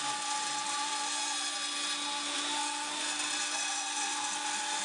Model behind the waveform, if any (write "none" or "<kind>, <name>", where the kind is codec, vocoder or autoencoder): none